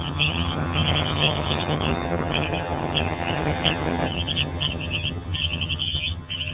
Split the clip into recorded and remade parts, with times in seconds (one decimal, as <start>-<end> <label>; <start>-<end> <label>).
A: 0.0-6.5 remade